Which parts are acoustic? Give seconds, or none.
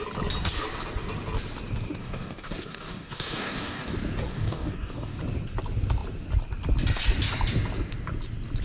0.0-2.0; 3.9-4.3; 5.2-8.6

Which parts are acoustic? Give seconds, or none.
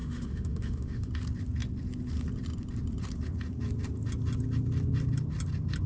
1.1-5.9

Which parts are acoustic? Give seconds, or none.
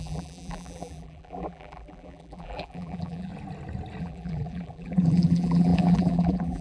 3.3-4.0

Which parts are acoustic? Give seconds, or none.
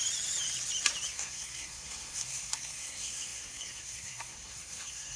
0.0-1.1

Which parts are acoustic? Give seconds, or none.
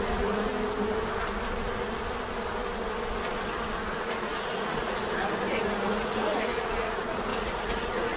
0.5-3.9; 5.0-5.6